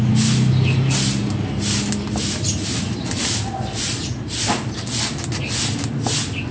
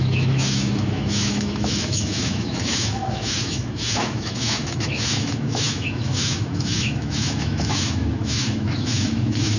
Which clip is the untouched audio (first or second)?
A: first